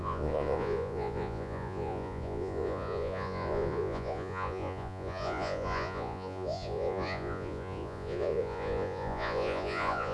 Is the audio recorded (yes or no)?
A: no